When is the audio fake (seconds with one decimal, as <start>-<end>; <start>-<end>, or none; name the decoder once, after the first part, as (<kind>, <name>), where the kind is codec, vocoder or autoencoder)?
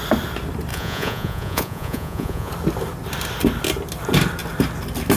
0.7-2.5 (vocoder, Vocos)